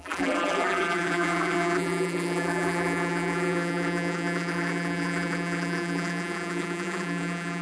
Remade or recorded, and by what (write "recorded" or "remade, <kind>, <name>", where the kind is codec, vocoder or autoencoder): remade, vocoder, BigVGAN v2